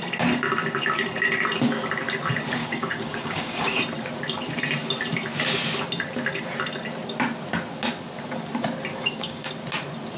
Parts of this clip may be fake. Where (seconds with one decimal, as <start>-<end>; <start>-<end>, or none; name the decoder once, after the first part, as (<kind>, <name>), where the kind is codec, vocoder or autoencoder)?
2.6-3.8 (codec, DAC); 8.9-9.5